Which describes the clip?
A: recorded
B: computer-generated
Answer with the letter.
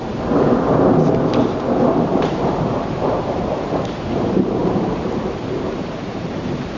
B